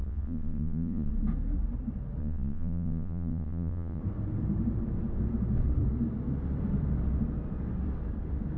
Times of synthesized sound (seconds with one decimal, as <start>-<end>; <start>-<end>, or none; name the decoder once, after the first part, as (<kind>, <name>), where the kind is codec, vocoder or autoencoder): 0.0-1.1 (vocoder, Vocos); 2.2-4.0